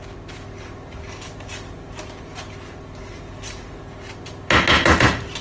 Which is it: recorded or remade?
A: recorded